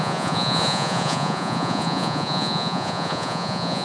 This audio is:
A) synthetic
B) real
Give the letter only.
A